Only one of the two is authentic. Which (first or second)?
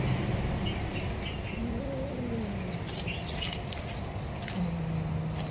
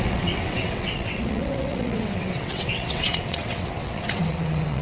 first